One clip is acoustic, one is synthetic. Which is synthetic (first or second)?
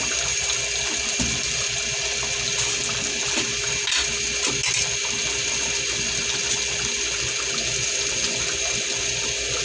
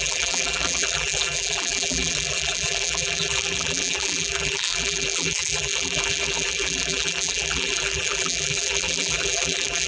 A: second